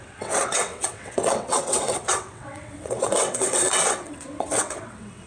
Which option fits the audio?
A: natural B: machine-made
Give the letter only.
B